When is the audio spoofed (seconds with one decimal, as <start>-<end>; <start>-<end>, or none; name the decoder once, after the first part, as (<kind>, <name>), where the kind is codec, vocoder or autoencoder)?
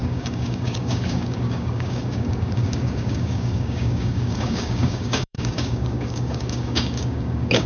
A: 0.0-7.7 (codec, DAC)